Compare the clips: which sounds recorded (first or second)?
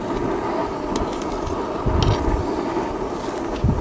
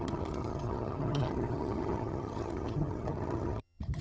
first